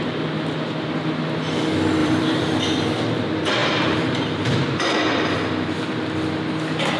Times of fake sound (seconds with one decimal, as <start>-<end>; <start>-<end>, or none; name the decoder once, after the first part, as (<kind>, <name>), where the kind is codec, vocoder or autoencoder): 2.0-2.5 (vocoder, BigVGAN v2); 3.6-4.9